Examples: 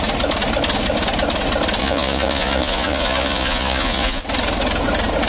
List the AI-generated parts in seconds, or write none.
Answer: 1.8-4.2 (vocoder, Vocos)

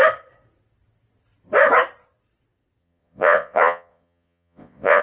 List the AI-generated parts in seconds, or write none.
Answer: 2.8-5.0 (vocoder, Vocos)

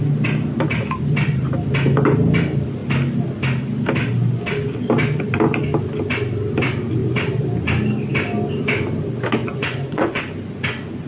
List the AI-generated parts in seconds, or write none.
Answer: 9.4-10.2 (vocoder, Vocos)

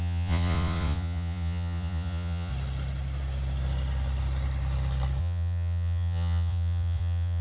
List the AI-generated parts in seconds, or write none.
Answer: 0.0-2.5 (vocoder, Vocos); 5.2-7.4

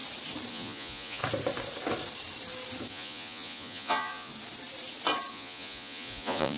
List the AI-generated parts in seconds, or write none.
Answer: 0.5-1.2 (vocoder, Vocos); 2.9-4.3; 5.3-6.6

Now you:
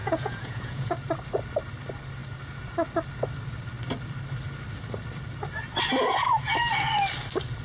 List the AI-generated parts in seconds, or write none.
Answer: 0.0-0.9 (vocoder, Vocos)

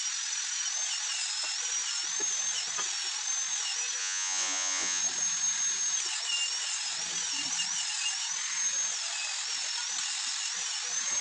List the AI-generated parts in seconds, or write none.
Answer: 4.0-5.0 (vocoder, Vocos)